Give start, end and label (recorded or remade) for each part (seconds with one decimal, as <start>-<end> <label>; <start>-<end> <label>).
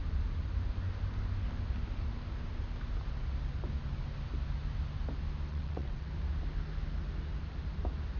0.0-5.5 recorded; 5.5-6.1 remade; 6.1-8.2 recorded